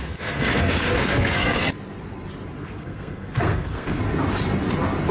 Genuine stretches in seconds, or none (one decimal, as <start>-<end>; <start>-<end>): 1.6-2.6; 4.0-5.1